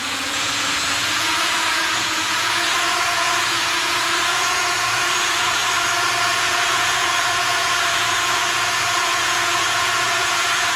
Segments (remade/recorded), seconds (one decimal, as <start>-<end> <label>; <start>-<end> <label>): 0.0-5.6 remade; 5.6-6.2 recorded; 6.2-10.8 remade